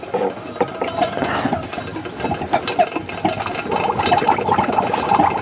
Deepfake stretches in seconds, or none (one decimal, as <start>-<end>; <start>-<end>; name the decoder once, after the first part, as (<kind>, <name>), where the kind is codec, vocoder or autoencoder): none